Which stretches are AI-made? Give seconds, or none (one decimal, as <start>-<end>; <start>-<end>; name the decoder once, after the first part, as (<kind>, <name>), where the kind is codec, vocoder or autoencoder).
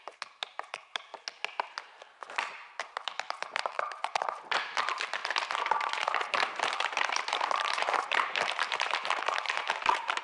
0.0-1.1 (vocoder, BigVGAN v2); 1.8-5.2; 5.9-10.2